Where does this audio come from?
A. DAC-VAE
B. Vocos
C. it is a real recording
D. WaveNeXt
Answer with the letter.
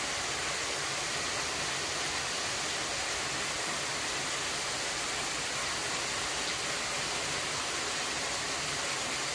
C